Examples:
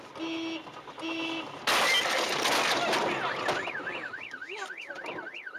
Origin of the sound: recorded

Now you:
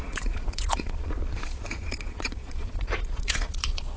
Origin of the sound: remade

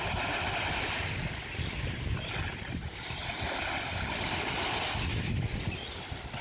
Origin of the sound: recorded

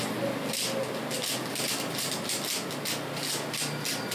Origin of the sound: recorded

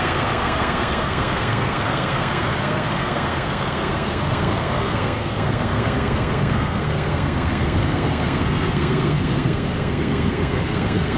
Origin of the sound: remade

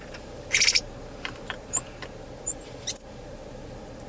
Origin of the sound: remade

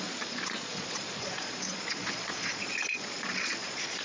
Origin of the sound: remade